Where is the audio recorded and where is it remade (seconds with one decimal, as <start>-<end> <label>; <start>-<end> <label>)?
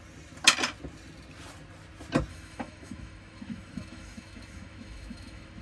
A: 0.0-2.3 recorded; 2.3-5.6 remade